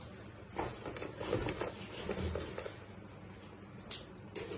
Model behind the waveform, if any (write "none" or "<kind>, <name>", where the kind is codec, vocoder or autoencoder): none